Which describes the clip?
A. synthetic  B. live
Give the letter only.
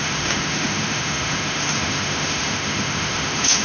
A